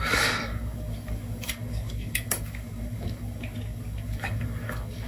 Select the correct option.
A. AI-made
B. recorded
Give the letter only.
A